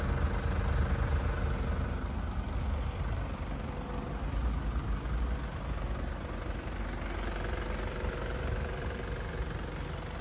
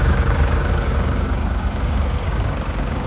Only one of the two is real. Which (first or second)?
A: first